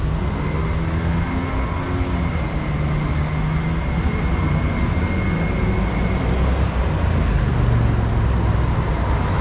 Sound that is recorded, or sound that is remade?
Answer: recorded